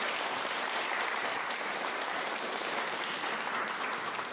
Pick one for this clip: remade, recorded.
remade